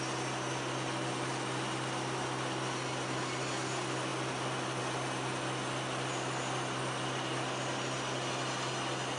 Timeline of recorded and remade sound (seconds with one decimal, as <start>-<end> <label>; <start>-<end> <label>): 0.0-9.2 recorded